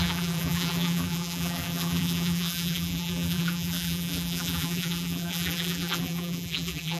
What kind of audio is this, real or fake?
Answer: fake